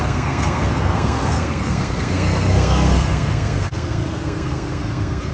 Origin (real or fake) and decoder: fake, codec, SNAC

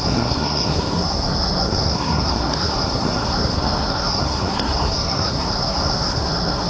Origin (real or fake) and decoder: fake, codec, SNAC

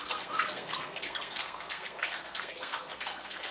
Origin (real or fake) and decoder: fake, codec, SNAC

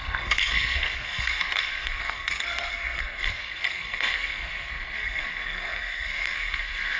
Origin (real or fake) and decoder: fake, codec, SNAC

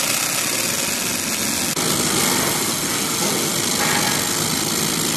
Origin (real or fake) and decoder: real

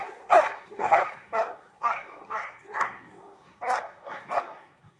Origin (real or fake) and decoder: fake, codec, SNAC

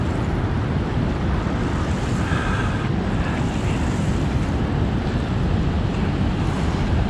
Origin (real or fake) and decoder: real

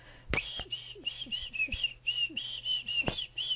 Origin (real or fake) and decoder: real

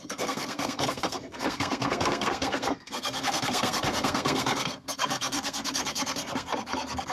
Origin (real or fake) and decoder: fake, codec, SNAC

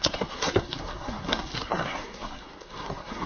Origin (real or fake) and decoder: fake, codec, SNAC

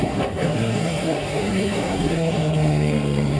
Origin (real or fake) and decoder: fake, codec, SNAC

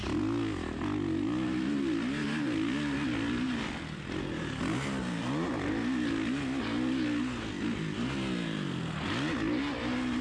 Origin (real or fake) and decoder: real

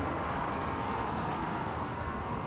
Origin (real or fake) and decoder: fake, codec, SNAC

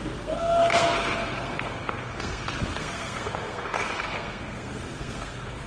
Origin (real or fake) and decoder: fake, codec, SNAC